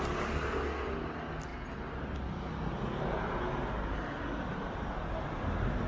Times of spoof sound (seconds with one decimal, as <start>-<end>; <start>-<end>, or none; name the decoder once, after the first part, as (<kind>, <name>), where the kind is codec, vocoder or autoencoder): none